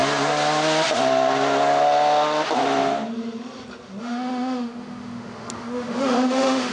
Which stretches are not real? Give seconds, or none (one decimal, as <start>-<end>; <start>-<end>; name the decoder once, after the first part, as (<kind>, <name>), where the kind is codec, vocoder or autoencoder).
4.0-6.7 (autoencoder, DAC-VAE)